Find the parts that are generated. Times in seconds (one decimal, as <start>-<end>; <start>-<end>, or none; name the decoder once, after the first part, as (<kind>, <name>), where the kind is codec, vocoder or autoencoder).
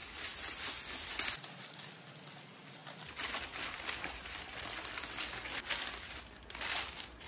none